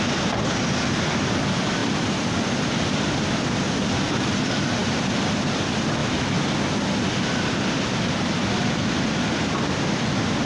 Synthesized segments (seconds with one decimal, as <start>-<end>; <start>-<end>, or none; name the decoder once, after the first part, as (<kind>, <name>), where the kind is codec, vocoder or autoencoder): none